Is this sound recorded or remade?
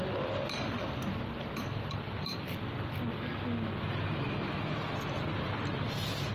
recorded